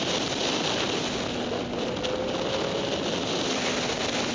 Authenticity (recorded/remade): recorded